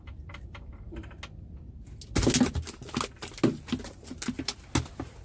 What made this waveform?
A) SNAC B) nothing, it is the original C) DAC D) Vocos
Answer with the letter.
B